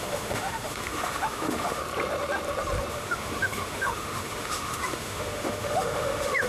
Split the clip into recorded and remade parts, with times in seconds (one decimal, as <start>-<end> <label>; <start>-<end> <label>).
0.0-1.8 remade; 1.8-2.9 recorded; 2.9-6.5 remade